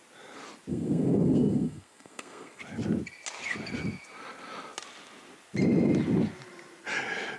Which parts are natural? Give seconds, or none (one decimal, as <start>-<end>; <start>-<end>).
0.0-0.7; 2.6-7.4